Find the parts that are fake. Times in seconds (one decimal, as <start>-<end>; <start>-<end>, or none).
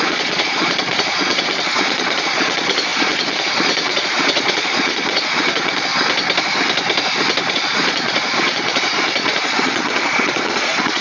0.0-5.9; 7.5-11.0